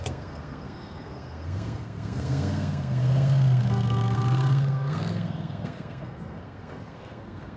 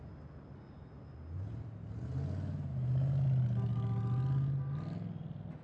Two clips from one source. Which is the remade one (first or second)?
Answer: first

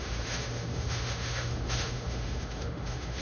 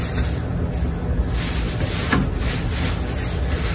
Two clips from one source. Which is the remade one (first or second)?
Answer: first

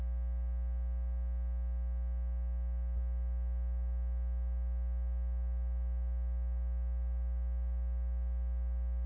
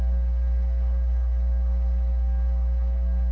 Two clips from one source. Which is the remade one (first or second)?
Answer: second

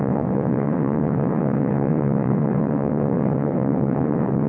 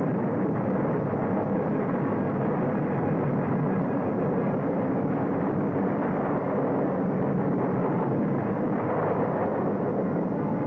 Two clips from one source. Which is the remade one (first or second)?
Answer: first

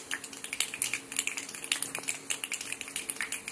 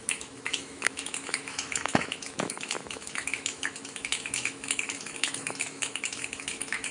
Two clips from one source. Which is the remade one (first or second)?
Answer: second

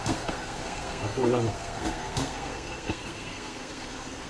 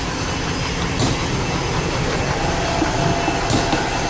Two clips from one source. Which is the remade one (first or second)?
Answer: first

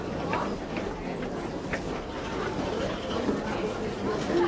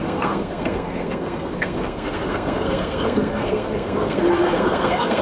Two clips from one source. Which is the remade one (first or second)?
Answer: second